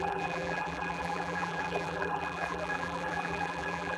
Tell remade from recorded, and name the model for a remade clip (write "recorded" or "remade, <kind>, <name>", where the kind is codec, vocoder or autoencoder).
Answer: remade, vocoder, BigVGAN v2